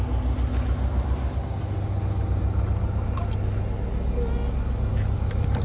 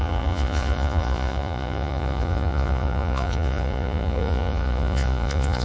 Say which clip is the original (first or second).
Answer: first